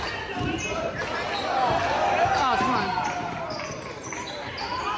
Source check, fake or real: real